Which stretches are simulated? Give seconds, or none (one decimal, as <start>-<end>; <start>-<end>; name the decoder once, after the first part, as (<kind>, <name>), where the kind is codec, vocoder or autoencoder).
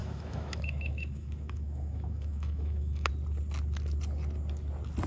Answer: 0.0-3.1 (autoencoder, DAC-VAE)